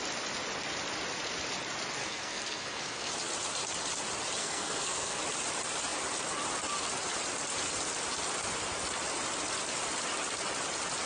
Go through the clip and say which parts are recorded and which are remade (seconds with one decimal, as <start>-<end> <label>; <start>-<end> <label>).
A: 0.0-2.0 recorded; 2.0-3.1 remade; 3.1-4.4 recorded; 4.4-5.2 remade; 5.2-11.1 recorded